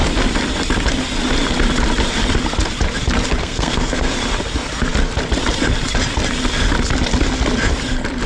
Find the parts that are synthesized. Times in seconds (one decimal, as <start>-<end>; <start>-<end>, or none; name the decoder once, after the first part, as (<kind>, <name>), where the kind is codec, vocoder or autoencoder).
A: 3.4-4.1 (codec, SNAC)